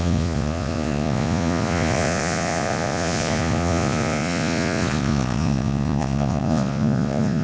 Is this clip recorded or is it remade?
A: remade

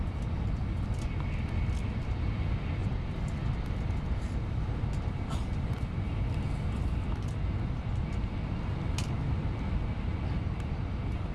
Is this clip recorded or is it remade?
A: recorded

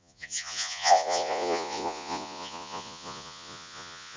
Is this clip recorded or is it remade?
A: remade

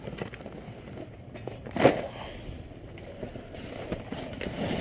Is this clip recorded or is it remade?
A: recorded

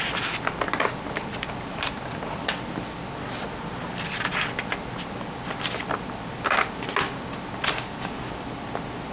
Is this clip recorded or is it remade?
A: recorded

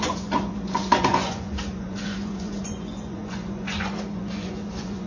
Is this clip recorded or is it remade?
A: remade